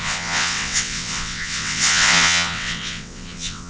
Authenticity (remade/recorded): remade